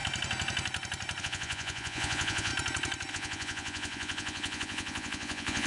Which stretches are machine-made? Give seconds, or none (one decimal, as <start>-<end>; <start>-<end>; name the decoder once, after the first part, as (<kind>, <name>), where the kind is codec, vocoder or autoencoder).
1.2-2.5 (vocoder, Vocos); 3.1-5.7